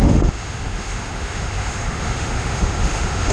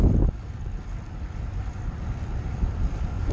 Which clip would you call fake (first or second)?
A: first